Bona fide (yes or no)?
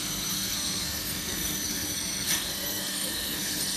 no